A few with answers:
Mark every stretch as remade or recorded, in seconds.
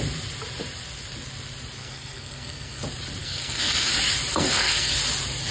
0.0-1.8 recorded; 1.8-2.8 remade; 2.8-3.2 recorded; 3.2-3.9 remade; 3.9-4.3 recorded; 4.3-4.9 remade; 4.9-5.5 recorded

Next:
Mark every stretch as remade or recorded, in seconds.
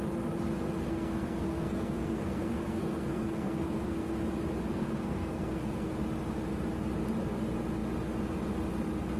0.0-0.8 recorded; 0.8-4.1 remade; 4.1-4.7 recorded; 4.7-5.9 remade; 5.9-9.2 recorded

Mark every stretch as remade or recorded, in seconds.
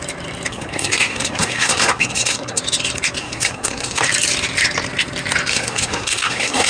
0.0-0.5 recorded; 0.5-2.6 remade; 2.6-3.2 recorded; 3.2-4.0 remade; 4.0-5.5 recorded; 5.5-6.7 remade